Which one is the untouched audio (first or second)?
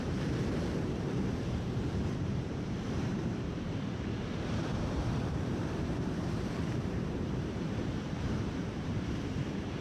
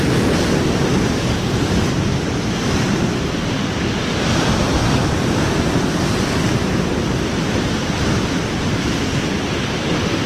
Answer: second